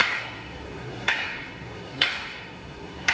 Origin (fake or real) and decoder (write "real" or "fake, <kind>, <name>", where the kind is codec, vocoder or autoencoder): fake, codec, SNAC